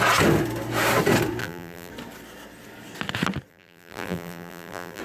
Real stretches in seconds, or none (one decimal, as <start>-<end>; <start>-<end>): 0.0-1.4; 1.9-3.5

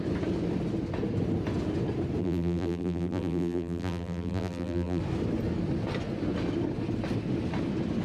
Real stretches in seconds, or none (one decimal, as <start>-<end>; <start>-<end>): 0.0-2.2; 5.0-8.0

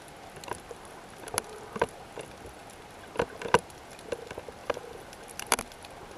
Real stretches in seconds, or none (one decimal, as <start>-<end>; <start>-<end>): 0.0-4.6; 5.6-6.2

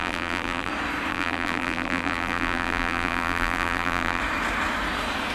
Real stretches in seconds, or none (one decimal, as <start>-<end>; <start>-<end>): 0.7-1.1; 4.2-5.3

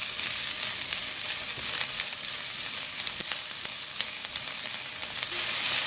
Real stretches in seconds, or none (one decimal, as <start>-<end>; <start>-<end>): 0.0-4.2; 4.9-5.9

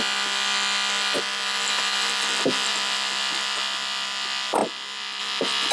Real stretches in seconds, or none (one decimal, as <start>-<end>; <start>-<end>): 0.0-5.7